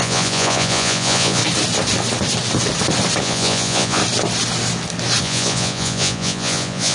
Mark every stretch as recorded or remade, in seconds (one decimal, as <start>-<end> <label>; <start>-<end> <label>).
0.0-1.4 remade; 1.4-3.2 recorded; 3.2-4.0 remade; 4.0-5.2 recorded; 5.2-6.9 remade